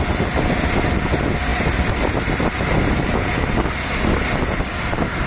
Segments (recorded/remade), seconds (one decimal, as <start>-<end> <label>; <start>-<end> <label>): 0.0-5.3 recorded